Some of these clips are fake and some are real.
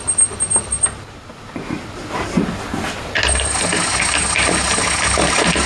real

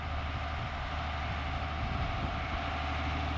real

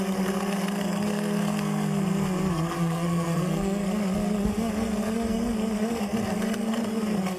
fake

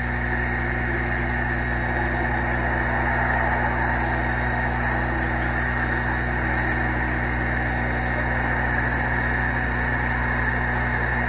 real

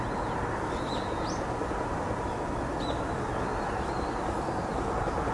real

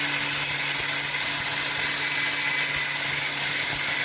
real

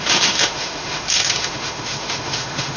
fake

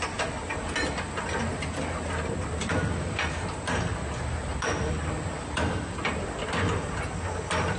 real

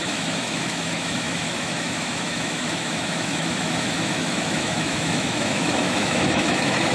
fake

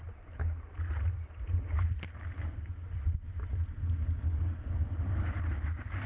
real